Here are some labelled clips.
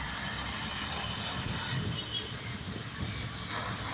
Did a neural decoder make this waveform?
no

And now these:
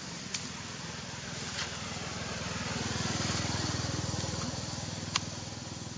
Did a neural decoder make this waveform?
no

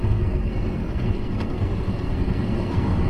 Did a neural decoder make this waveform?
yes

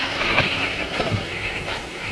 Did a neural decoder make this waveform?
yes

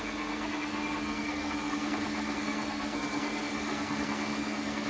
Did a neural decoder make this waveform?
yes